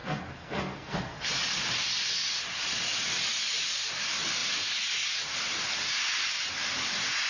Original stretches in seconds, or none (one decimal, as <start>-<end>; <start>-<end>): 1.3-7.3